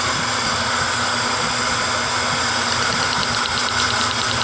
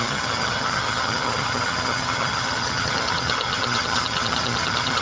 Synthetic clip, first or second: second